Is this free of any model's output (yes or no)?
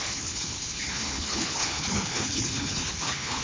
no